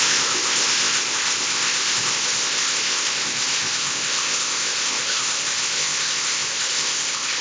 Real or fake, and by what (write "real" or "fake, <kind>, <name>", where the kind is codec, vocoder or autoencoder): fake, codec, ZipCodec